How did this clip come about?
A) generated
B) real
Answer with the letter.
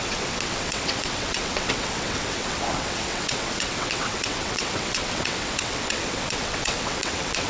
A